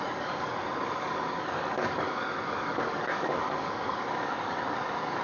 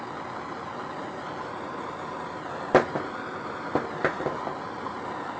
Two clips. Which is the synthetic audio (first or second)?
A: first